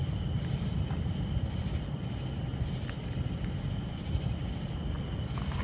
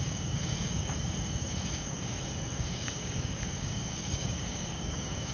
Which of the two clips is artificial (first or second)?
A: second